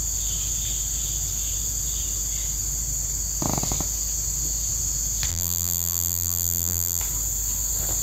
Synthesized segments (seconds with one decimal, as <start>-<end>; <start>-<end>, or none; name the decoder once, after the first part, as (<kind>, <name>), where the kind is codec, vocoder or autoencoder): 5.3-7.0 (vocoder, BigVGAN v2)